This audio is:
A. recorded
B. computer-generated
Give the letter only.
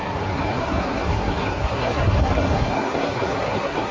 B